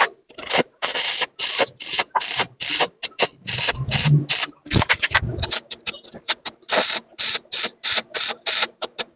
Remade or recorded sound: remade